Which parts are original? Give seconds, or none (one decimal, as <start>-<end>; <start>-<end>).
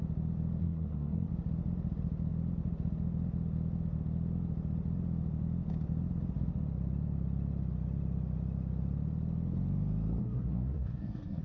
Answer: 0.0-0.6; 1.3-10.2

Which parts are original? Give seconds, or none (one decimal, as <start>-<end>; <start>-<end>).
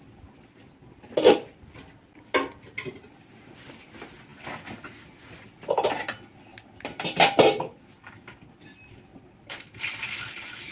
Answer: 0.0-10.7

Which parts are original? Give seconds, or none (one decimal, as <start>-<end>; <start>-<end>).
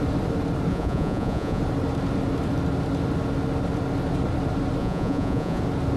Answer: 0.0-0.7; 1.6-4.8; 5.6-6.0